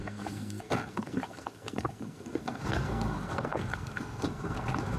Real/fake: fake